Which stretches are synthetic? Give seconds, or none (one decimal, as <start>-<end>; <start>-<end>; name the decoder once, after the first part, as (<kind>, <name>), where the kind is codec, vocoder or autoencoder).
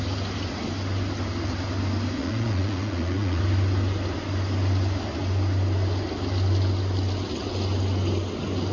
2.2-3.4 (vocoder, Vocos)